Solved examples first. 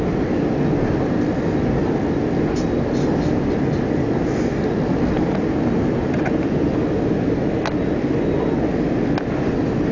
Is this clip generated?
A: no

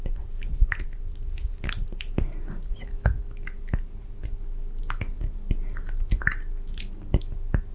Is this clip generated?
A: no